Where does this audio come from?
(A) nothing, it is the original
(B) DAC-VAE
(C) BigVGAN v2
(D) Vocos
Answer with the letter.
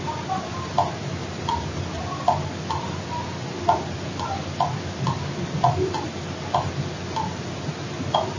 A